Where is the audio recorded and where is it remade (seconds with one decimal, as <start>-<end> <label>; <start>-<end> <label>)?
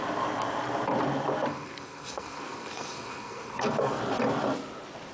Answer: 0.0-1.5 recorded; 1.5-4.0 remade; 4.0-5.1 recorded